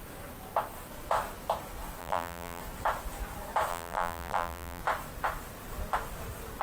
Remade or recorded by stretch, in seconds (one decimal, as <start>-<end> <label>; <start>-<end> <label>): 0.0-2.0 recorded; 2.0-2.6 remade; 2.6-3.7 recorded; 3.7-4.8 remade; 4.8-6.6 recorded